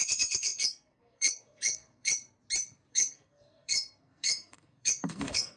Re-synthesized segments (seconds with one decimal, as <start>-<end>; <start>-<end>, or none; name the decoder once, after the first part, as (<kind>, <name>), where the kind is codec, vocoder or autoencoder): 0.0-2.1 (codec, SNAC); 2.9-5.6